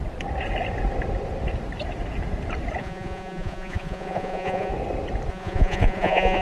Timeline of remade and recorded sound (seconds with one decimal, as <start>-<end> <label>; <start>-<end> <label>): 0.0-2.8 recorded; 2.8-4.7 remade; 4.7-5.3 recorded; 5.3-6.4 remade